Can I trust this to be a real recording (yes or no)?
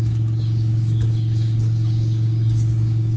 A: no